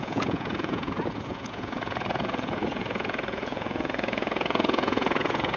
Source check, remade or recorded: remade